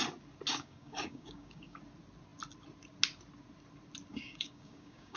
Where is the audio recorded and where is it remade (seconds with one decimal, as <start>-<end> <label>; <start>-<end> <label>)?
0.0-0.5 recorded; 0.5-1.8 remade; 1.8-4.1 recorded; 4.1-5.2 remade